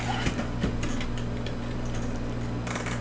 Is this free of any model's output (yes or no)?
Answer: yes